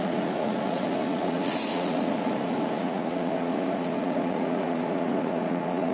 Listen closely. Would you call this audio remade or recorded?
remade